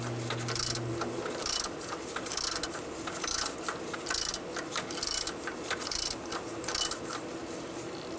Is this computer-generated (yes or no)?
no